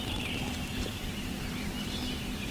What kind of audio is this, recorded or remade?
recorded